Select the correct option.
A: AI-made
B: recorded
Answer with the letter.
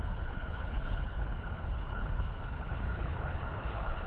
A